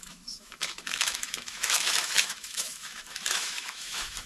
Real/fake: fake